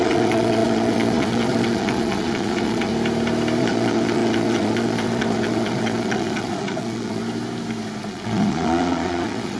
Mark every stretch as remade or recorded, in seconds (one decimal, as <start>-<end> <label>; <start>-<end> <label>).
0.0-2.9 remade; 2.9-3.6 recorded; 3.6-7.2 remade; 7.2-8.1 recorded; 8.1-9.6 remade